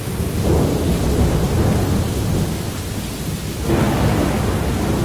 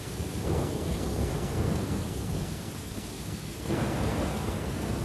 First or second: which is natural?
first